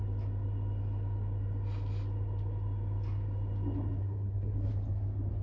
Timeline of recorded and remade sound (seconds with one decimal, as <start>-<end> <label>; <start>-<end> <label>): 0.0-4.0 recorded; 4.0-4.7 remade; 4.7-5.4 recorded

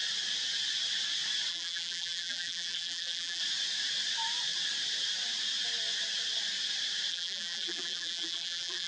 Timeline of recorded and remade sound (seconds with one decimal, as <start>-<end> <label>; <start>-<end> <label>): 0.0-1.5 recorded; 1.5-3.4 remade; 3.4-7.1 recorded; 7.1-8.9 remade

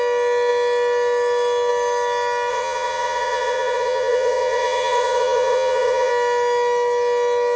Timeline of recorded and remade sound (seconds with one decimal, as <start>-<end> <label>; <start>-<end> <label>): 0.0-2.5 recorded; 2.5-6.1 remade; 6.1-7.6 recorded

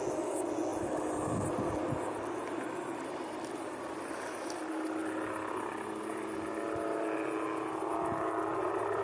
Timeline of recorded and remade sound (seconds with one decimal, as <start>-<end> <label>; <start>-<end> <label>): 0.0-9.0 recorded

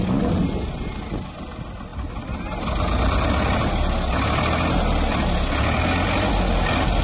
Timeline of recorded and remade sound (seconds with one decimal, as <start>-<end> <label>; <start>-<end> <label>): 0.0-7.0 recorded

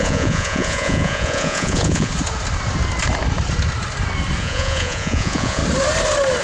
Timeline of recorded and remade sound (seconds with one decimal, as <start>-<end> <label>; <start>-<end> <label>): 0.0-2.1 remade; 2.1-4.4 recorded; 4.4-5.6 remade; 5.6-6.4 recorded

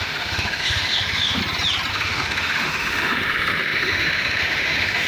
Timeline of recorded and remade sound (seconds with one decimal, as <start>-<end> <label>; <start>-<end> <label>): 0.0-1.4 remade; 1.4-1.9 recorded; 1.9-5.1 remade